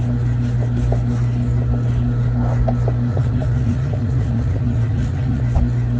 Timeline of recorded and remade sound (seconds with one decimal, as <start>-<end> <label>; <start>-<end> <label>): 0.0-3.1 recorded; 3.1-5.4 remade; 5.4-6.0 recorded